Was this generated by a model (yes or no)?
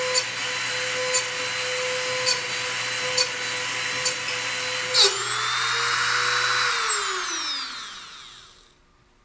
no